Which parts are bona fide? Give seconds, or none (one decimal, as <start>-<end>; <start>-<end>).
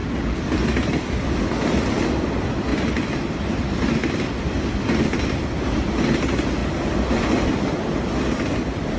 0.0-9.0